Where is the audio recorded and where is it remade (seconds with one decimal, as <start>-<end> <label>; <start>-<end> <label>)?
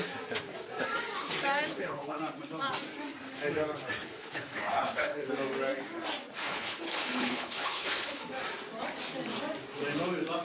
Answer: 0.0-1.7 recorded; 1.7-2.2 remade; 2.2-4.0 recorded; 4.0-5.3 remade; 5.3-6.4 recorded; 6.4-8.2 remade; 8.2-10.4 recorded